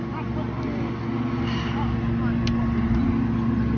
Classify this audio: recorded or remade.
recorded